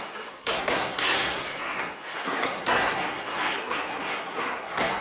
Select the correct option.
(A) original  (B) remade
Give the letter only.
B